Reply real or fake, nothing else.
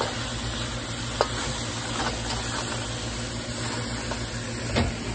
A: real